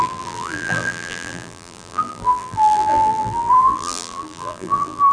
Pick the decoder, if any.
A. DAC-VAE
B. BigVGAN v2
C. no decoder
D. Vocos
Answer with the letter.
B